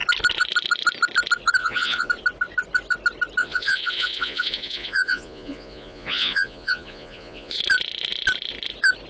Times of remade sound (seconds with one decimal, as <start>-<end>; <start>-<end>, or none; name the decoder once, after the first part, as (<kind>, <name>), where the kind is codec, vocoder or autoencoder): 1.6-2.1 (vocoder, Vocos); 3.4-7.6

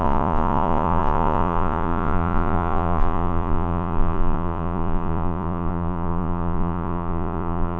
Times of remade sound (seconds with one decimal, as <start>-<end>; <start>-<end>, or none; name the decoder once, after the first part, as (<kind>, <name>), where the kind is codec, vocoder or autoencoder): 0.0-7.8 (vocoder, Vocos)

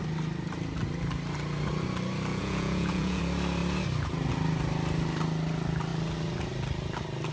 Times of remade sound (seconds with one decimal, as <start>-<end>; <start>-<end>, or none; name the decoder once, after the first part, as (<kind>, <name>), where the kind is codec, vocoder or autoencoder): 2.3-3.2 (vocoder, Vocos)

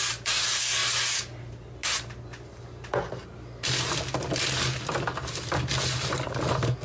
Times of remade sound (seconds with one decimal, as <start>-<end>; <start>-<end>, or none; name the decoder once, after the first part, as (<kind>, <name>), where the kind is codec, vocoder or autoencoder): none

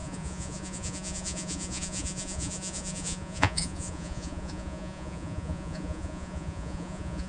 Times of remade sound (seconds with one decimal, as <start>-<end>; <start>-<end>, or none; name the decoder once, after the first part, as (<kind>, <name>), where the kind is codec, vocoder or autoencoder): 0.0-7.3 (vocoder, Vocos)

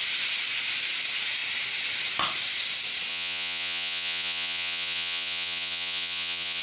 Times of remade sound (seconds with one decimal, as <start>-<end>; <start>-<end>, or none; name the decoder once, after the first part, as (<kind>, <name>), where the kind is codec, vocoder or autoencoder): 3.1-6.6 (vocoder, Vocos)